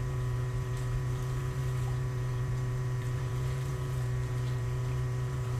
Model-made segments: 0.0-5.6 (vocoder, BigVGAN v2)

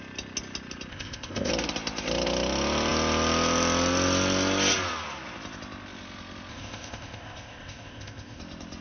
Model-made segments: 0.9-1.5 (codec, ZipCodec); 6.5-8.4

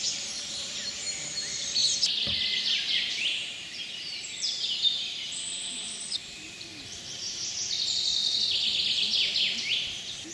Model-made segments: 0.0-1.8 (vocoder, BigVGAN v2); 2.6-6.7; 7.2-8.2; 9.7-10.3

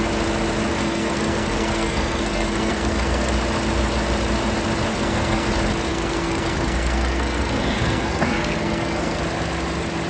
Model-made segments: 0.8-3.3 (codec, SNAC); 4.9-5.5; 5.9-9.2

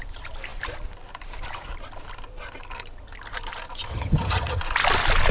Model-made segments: 3.9-4.6 (vocoder, HiFi-GAN)

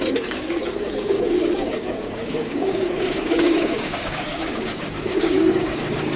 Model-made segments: 0.0-6.2 (codec, DAC)